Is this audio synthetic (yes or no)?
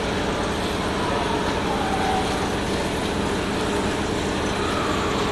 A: no